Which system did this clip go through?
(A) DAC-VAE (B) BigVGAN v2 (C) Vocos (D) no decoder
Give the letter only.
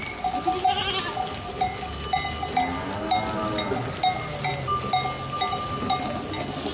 D